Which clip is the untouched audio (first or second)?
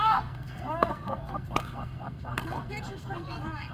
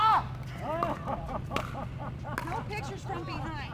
second